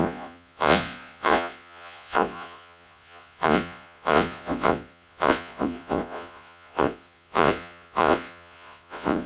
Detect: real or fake fake